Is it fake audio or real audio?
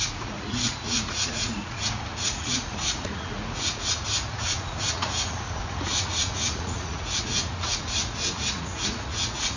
fake